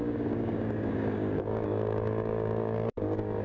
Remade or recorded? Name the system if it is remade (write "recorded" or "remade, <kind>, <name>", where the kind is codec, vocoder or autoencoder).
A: remade, codec, DAC